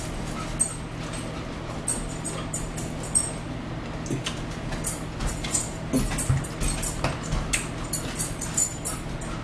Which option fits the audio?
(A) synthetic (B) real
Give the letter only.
B